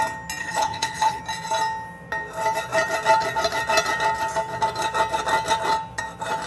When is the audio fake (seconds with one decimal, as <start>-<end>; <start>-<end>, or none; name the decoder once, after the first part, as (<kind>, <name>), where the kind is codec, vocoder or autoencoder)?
0.4-1.2 (codec, HILCodec)